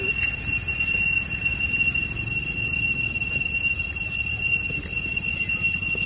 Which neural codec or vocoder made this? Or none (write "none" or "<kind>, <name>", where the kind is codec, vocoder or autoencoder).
none